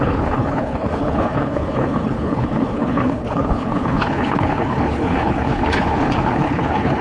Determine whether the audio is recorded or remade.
remade